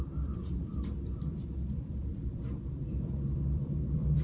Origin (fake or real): fake